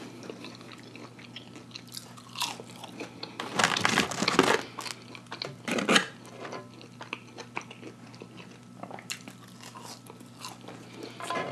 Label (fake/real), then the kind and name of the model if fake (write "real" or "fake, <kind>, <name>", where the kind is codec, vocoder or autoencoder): real